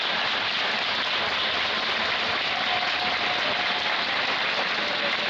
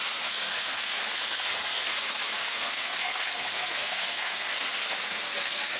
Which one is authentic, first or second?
first